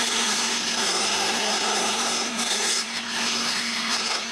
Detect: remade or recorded remade